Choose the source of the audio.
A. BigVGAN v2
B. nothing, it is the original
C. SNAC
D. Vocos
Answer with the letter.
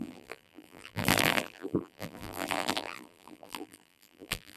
A